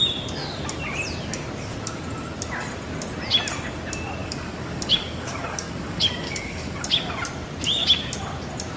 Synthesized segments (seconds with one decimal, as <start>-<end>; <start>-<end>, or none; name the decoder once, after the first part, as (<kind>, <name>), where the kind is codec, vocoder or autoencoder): 4.2-7.1 (codec, DAC)